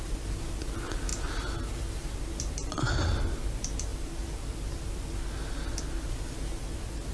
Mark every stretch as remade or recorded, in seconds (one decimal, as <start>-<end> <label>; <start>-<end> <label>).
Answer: 0.0-7.1 recorded